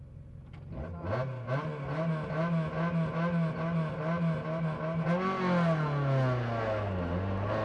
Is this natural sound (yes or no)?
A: yes